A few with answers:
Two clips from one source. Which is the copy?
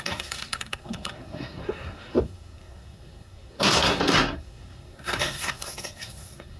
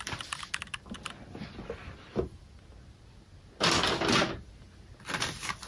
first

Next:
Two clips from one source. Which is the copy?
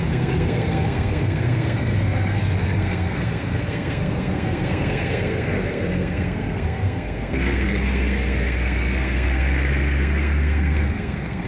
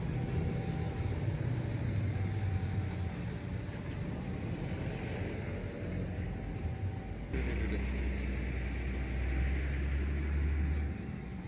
first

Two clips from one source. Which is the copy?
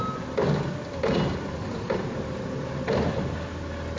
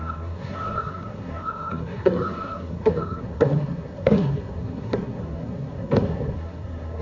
second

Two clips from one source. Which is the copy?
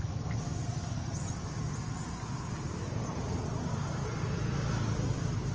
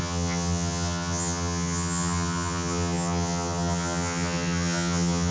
second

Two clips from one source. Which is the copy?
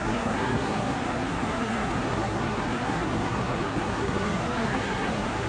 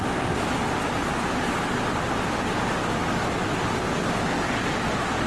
first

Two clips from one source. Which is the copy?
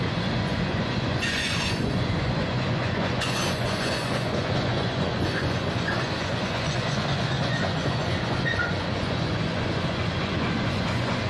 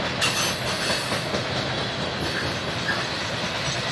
first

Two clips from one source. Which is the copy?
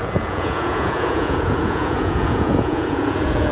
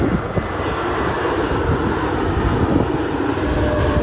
first